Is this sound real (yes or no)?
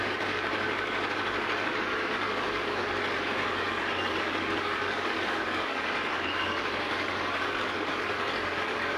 no